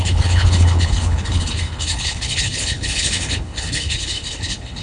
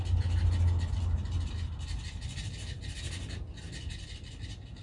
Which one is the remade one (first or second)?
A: first